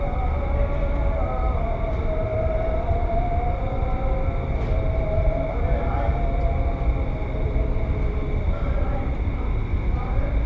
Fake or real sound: real